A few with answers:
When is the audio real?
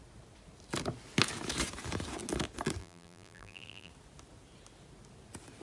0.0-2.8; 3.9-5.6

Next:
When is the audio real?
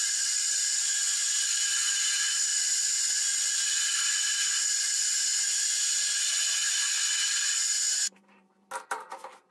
0.0-7.9; 8.5-9.5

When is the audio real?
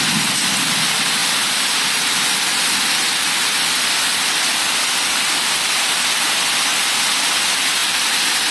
0.0-8.5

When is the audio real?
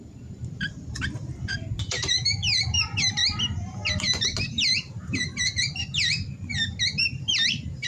3.2-4.0